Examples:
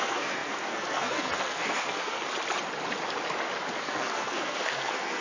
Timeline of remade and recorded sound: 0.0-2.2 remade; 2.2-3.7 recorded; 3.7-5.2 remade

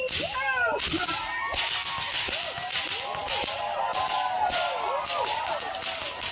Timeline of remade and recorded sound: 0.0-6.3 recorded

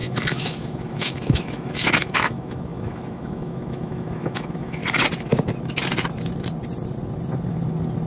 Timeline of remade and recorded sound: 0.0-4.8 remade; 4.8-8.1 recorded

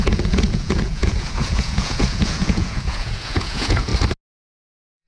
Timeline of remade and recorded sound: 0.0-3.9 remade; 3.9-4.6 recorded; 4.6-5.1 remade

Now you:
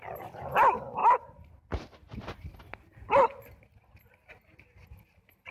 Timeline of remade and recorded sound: 0.0-3.2 remade; 3.2-5.1 recorded; 5.1-5.5 remade

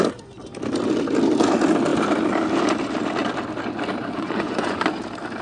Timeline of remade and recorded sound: 0.0-4.0 recorded; 4.0-4.9 remade; 4.9-5.4 recorded

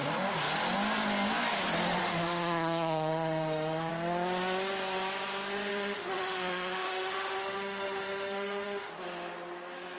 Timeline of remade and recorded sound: 0.0-2.0 recorded; 2.0-3.9 remade; 3.9-5.7 recorded; 5.7-8.9 remade; 8.9-10.0 recorded